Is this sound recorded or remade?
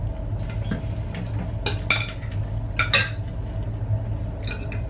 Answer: recorded